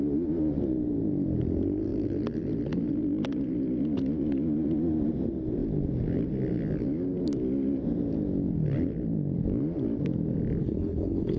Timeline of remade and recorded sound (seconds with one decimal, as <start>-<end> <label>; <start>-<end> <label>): 0.0-10.6 recorded; 10.6-11.4 remade